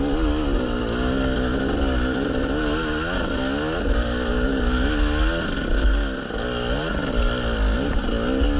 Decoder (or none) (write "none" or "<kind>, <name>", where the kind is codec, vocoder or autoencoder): none